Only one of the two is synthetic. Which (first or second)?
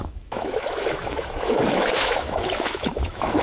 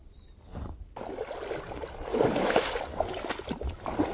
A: first